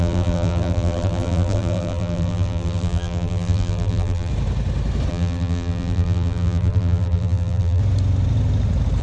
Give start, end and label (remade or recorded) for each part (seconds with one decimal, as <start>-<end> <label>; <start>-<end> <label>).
0.0-4.3 remade; 4.3-5.1 recorded; 5.1-7.8 remade; 7.8-9.0 recorded